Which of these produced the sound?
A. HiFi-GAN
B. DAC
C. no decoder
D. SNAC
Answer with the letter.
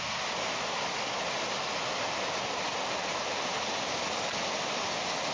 C